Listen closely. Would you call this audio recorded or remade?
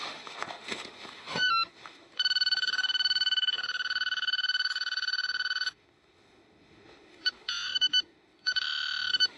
remade